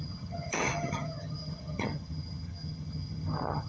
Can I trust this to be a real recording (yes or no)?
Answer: no